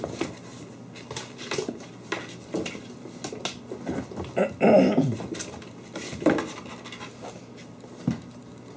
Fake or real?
real